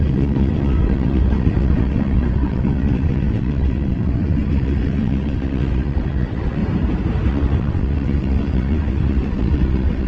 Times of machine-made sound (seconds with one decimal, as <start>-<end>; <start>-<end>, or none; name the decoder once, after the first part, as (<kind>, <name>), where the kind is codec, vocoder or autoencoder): 0.0-6.6 (vocoder, WaveNeXt); 7.3-10.1